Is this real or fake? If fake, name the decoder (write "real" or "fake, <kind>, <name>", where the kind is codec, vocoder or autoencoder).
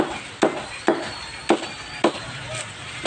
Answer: real